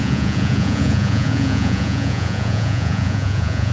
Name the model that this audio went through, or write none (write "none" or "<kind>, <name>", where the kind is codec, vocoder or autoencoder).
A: vocoder, Vocos